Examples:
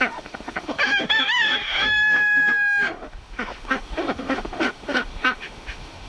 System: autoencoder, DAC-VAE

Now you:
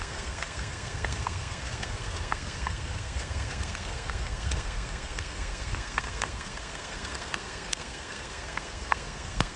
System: codec, SNAC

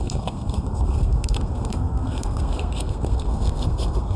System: codec, SNAC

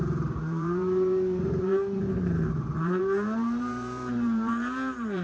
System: vocoder, BigVGAN v2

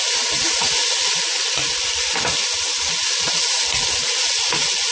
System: none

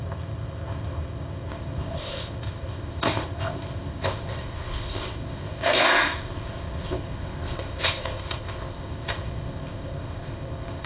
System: codec, ZipCodec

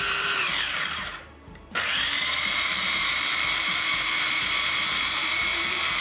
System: vocoder, BigVGAN v2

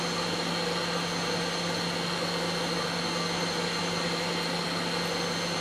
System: none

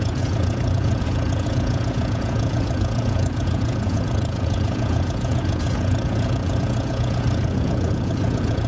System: vocoder, Vocos